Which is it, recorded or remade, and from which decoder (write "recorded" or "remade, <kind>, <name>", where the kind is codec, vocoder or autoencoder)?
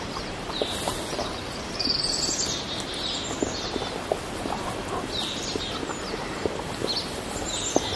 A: recorded